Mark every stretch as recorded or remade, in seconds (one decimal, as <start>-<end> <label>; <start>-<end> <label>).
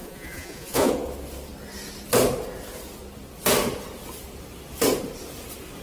0.0-0.9 remade; 0.9-5.8 recorded